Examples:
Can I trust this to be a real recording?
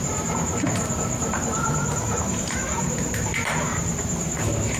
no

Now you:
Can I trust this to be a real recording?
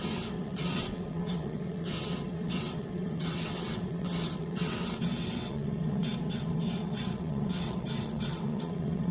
no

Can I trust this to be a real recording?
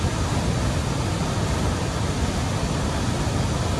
yes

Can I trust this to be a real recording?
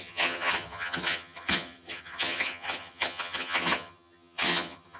no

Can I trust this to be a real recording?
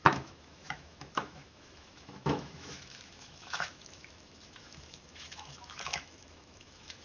no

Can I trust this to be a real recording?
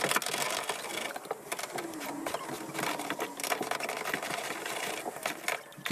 yes